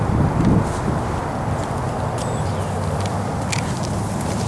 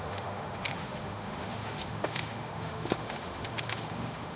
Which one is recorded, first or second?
first